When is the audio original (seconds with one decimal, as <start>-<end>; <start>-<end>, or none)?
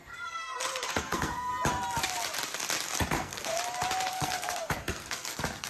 1.5-3.1; 3.5-4.1